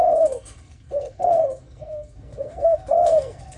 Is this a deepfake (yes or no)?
yes